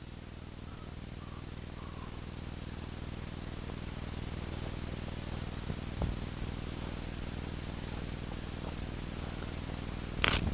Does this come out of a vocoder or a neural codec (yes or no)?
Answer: no